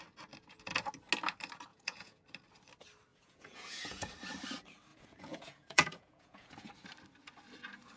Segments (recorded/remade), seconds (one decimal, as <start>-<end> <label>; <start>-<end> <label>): 0.0-1.7 recorded; 1.7-2.2 remade; 2.2-3.1 recorded; 3.1-4.1 remade; 4.1-4.9 recorded; 4.9-6.7 remade; 6.7-8.0 recorded